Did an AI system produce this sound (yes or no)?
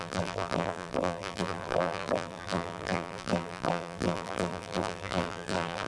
yes